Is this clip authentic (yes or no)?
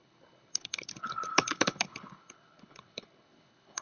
no